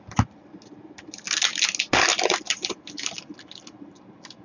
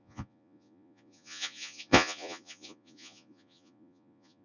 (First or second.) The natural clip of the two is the first